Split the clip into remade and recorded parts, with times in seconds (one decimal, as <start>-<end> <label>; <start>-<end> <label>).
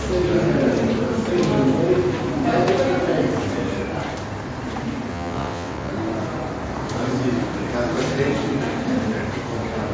0.0-5.1 recorded; 5.1-5.9 remade; 5.9-9.9 recorded